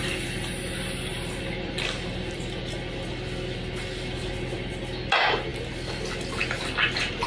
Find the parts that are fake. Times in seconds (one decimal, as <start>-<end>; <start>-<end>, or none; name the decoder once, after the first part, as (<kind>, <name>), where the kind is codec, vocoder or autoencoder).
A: none